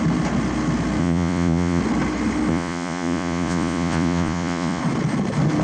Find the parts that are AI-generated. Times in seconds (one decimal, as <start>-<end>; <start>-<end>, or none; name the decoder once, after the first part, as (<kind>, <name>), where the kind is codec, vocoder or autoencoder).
1.0-1.8 (vocoder, Vocos); 2.5-4.8